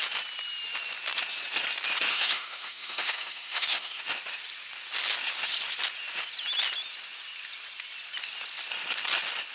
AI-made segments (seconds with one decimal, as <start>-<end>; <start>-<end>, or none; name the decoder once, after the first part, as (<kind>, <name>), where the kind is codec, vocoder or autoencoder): 2.1-4.0 (codec, SNAC)